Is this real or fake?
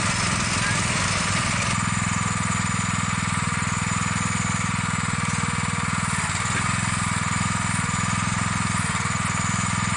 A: real